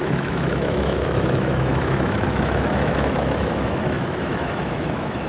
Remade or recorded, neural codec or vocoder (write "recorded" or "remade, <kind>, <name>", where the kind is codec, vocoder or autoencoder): remade, autoencoder, DAC-VAE